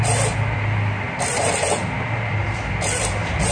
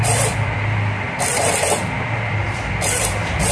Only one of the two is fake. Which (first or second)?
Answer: second